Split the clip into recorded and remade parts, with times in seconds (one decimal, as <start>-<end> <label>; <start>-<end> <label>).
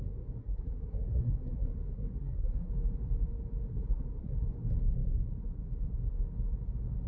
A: 0.0-0.4 recorded; 0.4-2.7 remade; 2.7-3.7 recorded; 3.7-4.4 remade; 4.4-7.1 recorded